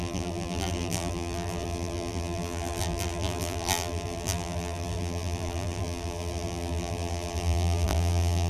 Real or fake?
fake